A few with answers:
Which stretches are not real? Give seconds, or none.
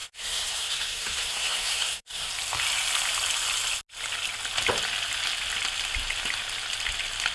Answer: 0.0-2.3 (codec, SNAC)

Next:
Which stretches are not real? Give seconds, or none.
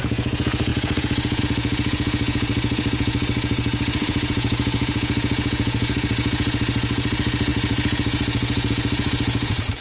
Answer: 0.0-9.8 (vocoder, Vocos)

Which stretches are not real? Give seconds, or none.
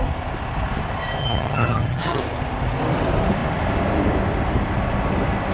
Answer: 1.2-2.2 (vocoder, HiFi-GAN)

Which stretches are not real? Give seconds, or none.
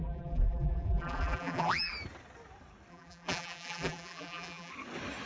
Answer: 0.0-1.9 (vocoder, BigVGAN v2); 2.9-4.7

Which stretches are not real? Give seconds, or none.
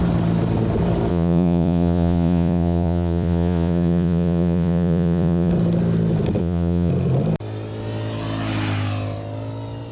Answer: 1.1-5.5 (vocoder, Vocos); 6.4-6.9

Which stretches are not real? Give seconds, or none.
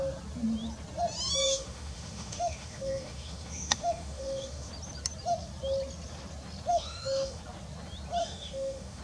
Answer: 1.4-4.7 (autoencoder, DAC-VAE); 6.7-7.4; 8.2-9.0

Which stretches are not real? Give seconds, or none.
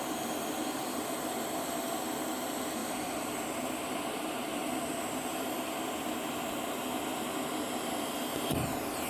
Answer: 2.8-3.3 (vocoder, BigVGAN v2); 4.5-5.6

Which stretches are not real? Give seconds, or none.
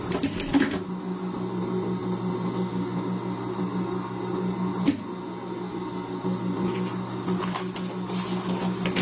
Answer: none